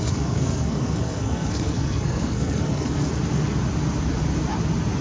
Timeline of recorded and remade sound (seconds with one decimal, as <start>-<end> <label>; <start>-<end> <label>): 0.0-3.0 remade; 3.0-5.0 recorded

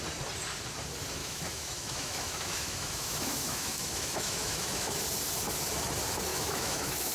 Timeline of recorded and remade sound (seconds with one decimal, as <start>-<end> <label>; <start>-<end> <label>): 0.0-1.2 recorded; 1.2-5.0 remade; 5.0-6.3 recorded; 6.3-7.1 remade

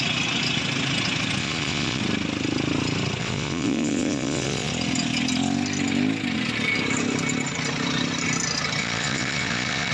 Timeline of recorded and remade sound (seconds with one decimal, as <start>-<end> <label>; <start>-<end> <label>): 0.0-1.4 recorded; 1.4-2.0 remade; 2.0-3.2 recorded; 3.2-4.7 remade; 4.7-8.8 recorded; 8.8-9.9 remade

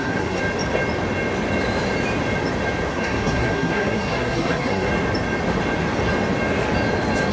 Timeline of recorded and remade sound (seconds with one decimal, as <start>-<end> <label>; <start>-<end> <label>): 0.0-0.4 remade; 0.4-2.9 recorded; 2.9-4.9 remade; 4.9-7.3 recorded

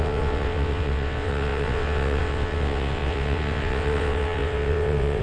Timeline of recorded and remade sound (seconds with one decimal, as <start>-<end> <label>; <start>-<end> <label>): 0.0-5.2 remade